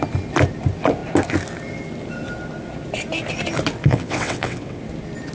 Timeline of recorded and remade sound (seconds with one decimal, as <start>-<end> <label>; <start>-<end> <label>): 0.0-3.9 recorded; 3.9-4.8 remade; 4.8-5.3 recorded